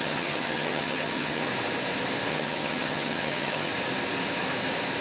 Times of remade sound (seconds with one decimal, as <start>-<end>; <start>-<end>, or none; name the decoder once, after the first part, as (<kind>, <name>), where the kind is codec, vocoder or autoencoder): 0.0-1.5 (vocoder, HiFi-GAN); 2.3-3.7